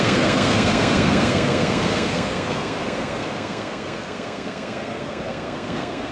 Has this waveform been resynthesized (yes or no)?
yes